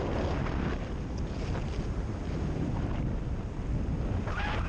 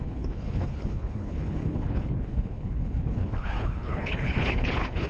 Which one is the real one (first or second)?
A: first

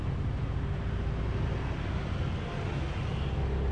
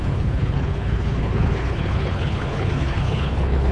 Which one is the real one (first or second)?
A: first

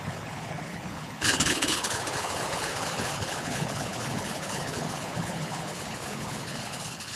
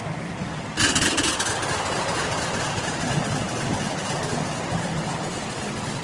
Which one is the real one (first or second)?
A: second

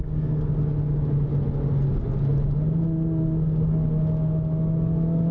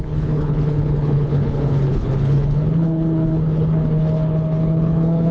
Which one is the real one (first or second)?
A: first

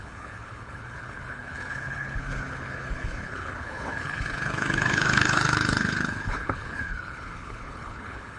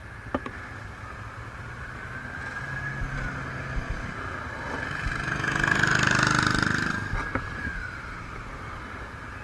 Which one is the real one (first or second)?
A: second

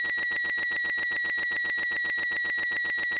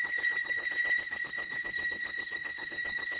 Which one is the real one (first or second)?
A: first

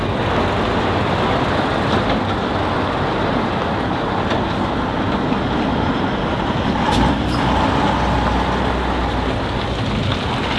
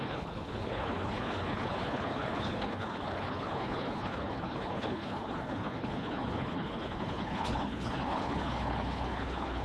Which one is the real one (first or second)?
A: first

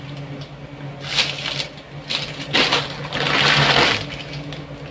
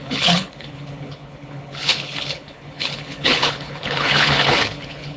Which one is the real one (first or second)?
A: first